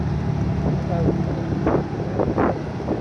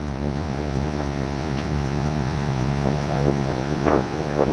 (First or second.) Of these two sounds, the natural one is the first